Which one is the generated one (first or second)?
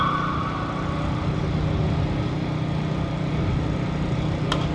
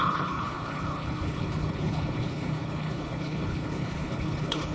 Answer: second